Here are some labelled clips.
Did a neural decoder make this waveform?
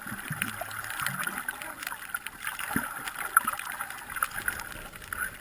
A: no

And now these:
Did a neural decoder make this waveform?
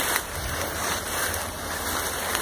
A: no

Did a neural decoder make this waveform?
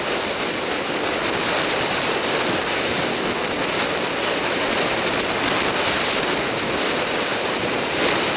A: no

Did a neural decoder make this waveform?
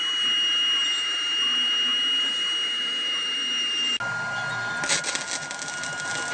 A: no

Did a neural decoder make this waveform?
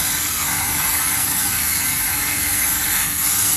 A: yes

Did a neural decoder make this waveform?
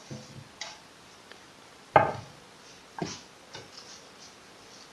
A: no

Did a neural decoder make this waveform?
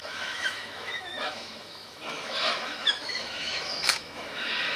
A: yes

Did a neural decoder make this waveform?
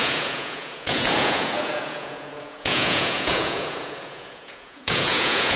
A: yes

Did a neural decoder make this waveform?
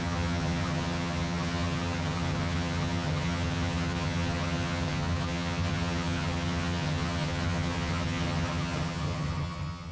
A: yes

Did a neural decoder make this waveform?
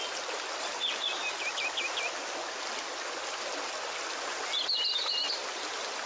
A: no